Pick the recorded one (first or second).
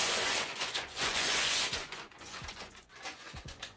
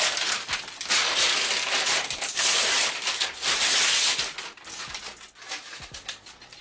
second